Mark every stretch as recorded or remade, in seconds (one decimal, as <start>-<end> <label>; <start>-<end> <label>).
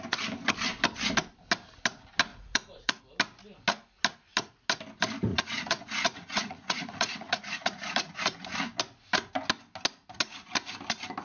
0.0-2.3 recorded; 2.3-3.0 remade; 3.0-5.3 recorded; 5.3-8.2 remade; 8.2-11.2 recorded